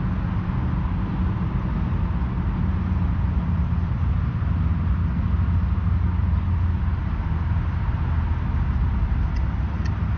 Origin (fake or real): real